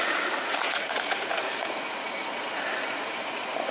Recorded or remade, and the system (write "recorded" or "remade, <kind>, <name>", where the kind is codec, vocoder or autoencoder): remade, vocoder, Vocos